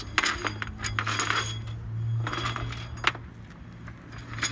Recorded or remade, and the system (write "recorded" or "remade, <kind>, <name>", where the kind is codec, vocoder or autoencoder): recorded